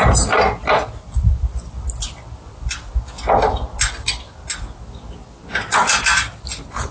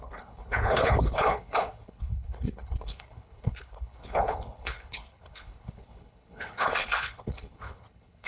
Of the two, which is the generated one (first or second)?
second